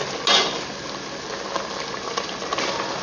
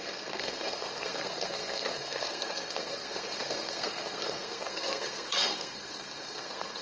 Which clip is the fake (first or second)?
second